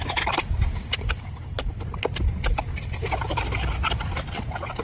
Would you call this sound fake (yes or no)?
no